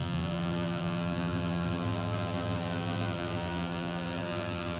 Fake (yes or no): yes